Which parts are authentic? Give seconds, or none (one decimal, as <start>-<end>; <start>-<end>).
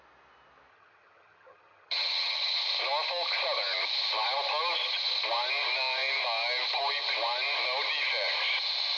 0.0-0.7; 2.6-9.0